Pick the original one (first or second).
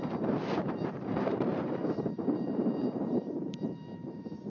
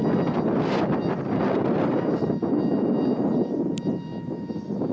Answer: second